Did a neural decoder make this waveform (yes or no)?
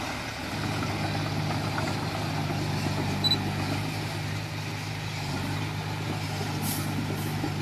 no